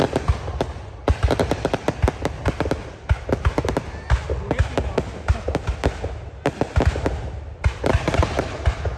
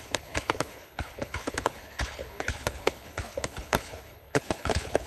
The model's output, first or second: second